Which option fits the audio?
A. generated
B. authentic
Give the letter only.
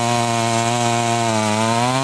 B